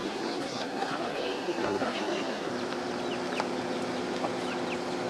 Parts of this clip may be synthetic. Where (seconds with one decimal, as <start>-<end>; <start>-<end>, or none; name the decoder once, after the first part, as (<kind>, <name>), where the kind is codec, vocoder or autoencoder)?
0.0-2.5 (codec, SNAC)